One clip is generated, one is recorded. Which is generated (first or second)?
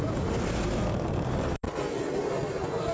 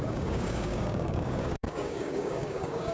second